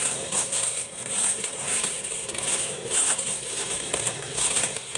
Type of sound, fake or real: fake